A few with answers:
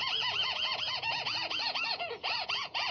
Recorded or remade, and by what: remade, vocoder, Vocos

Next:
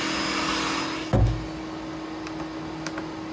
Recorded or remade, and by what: recorded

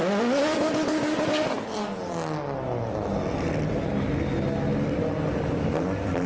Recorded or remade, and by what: recorded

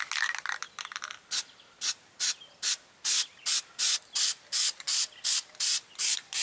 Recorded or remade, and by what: recorded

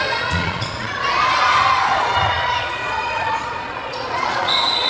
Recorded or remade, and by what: remade, vocoder, Vocos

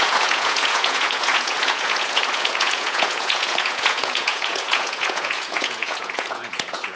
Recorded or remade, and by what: remade, vocoder, Vocos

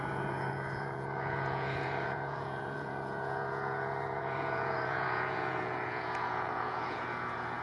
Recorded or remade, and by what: remade, vocoder, Vocos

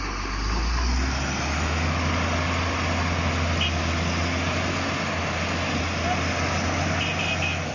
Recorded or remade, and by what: recorded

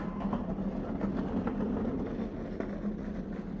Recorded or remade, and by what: recorded